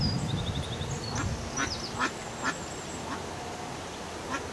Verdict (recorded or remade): recorded